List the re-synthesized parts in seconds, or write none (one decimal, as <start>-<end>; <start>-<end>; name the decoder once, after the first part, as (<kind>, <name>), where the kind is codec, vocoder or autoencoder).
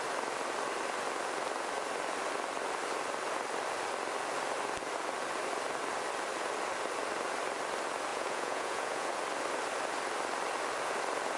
8.1-9.1 (vocoder, Vocos)